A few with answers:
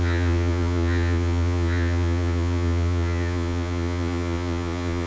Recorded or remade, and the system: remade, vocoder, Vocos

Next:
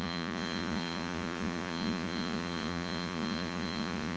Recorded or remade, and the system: remade, vocoder, Vocos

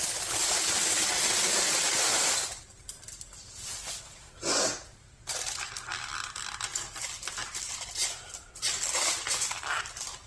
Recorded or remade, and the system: recorded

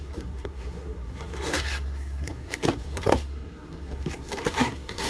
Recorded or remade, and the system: remade, codec, SNAC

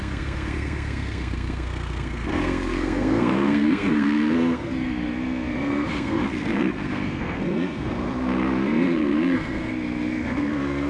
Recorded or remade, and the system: remade, codec, SNAC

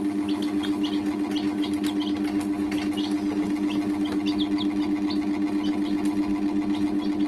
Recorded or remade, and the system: recorded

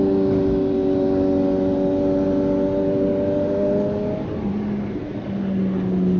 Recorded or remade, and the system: recorded